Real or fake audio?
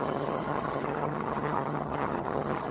fake